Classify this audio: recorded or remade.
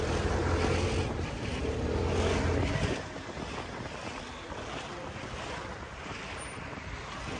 recorded